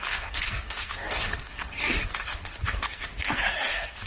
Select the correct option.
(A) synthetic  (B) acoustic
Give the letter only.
A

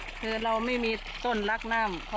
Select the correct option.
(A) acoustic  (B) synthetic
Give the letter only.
A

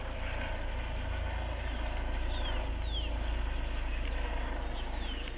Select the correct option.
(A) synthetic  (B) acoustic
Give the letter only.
B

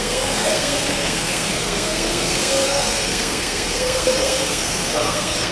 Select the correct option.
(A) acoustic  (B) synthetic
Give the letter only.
B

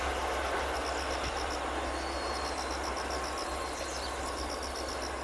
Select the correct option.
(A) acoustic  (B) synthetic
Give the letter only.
A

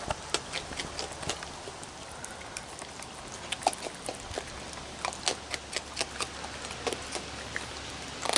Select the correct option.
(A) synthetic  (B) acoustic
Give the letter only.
B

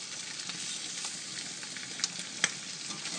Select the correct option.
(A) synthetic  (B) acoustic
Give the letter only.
B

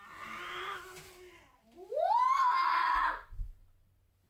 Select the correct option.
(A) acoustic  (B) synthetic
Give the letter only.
A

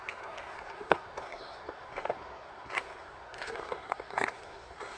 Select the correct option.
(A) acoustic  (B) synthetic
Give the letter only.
B